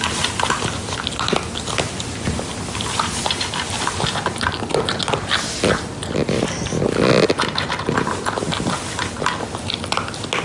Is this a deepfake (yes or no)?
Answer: no